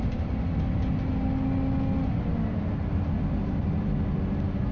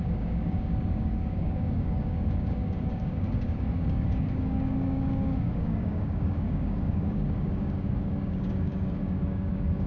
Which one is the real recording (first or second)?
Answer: first